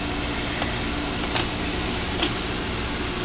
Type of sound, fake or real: real